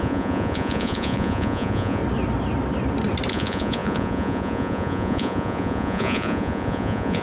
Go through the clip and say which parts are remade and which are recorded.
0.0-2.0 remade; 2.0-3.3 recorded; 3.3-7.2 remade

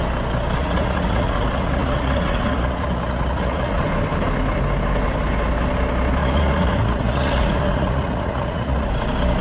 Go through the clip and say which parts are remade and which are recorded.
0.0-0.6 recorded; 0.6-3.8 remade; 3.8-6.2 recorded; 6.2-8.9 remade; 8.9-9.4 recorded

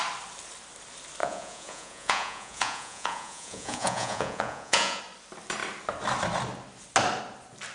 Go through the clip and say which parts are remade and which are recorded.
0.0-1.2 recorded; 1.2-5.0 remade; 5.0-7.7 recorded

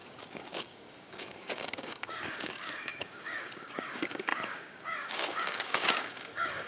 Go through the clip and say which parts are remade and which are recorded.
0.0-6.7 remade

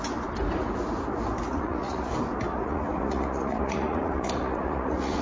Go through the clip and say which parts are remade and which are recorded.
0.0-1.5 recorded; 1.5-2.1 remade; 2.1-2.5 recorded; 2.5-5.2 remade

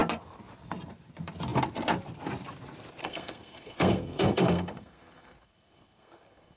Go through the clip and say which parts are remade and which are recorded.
0.0-3.0 recorded; 3.0-6.6 remade

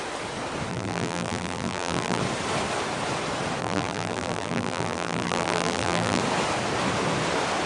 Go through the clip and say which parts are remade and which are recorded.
0.0-0.7 recorded; 0.7-2.2 remade; 2.2-3.6 recorded; 3.6-6.2 remade; 6.2-7.7 recorded

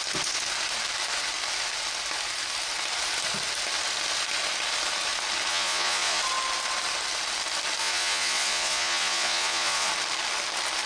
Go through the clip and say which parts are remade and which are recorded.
0.0-5.5 recorded; 5.5-6.2 remade; 6.2-7.8 recorded; 7.8-9.9 remade; 9.9-10.9 recorded